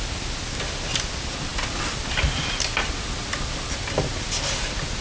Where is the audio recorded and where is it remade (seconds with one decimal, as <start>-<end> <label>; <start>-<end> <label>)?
0.0-5.0 recorded